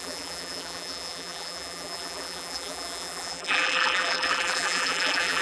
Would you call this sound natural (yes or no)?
no